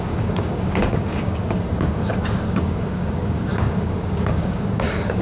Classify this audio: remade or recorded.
remade